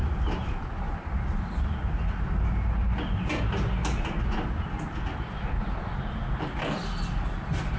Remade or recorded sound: recorded